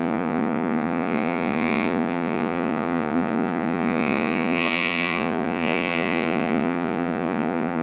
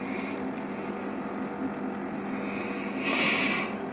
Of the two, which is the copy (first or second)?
first